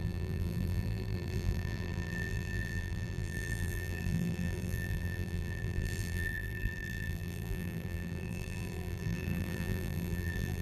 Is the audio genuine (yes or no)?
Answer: no